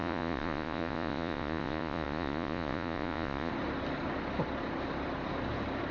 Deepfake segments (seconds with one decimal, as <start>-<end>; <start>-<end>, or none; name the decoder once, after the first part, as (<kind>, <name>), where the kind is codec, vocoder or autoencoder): 0.0-3.5 (vocoder, Vocos)